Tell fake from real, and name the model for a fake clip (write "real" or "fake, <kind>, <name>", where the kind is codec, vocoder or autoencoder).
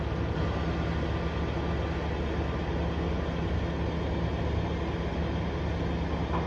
real